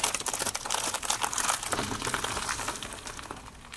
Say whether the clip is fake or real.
real